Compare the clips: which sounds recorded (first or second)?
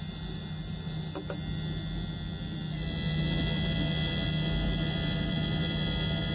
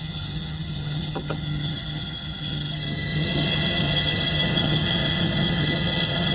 first